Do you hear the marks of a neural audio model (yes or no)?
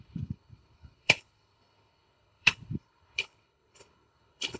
yes